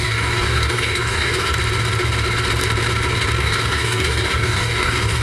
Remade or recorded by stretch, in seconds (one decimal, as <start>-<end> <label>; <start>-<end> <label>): 0.0-1.5 remade; 1.5-3.4 recorded; 3.4-5.2 remade